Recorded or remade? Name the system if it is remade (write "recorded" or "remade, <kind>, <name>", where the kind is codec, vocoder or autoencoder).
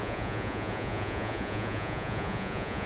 remade, vocoder, Vocos